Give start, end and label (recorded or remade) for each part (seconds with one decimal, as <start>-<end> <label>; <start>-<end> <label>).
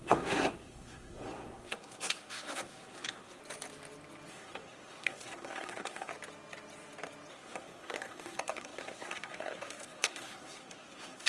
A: 0.0-3.4 remade; 3.4-4.3 recorded; 4.3-6.1 remade; 6.1-7.3 recorded; 7.3-11.3 remade